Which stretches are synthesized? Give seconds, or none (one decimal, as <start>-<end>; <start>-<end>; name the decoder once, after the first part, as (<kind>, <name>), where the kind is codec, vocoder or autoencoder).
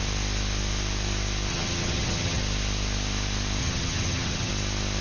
1.5-2.4 (vocoder, HiFi-GAN); 3.6-4.5